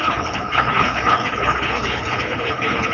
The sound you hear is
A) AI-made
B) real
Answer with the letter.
A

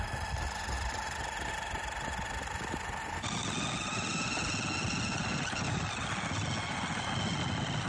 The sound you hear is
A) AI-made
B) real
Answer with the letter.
B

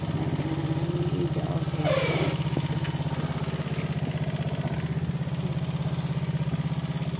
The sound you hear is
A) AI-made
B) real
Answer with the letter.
B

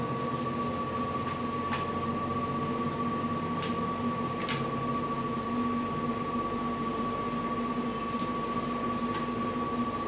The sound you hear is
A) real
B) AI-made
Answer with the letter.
A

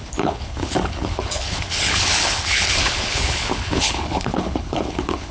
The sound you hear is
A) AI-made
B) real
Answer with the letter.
A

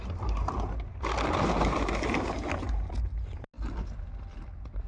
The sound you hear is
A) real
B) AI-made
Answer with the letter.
A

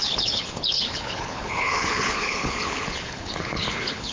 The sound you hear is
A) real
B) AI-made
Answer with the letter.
B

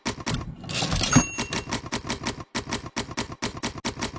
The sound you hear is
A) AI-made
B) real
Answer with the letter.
B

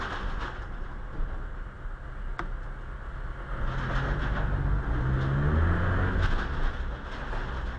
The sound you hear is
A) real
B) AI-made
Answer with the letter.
A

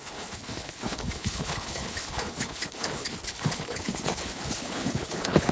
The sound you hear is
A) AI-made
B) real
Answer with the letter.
A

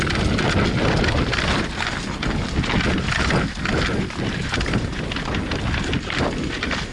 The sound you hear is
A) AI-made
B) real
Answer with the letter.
B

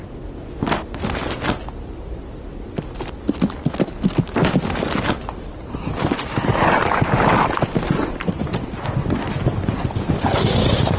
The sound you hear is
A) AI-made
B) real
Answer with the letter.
B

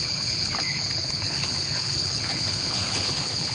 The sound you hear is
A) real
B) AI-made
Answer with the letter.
B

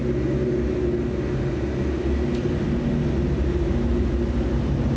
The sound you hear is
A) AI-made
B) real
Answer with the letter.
B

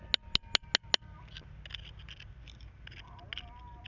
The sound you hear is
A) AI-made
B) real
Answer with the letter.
B